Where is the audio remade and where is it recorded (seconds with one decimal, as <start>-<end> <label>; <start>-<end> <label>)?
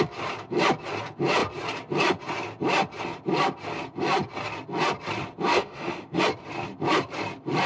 0.0-5.5 recorded; 5.5-6.2 remade; 6.2-7.7 recorded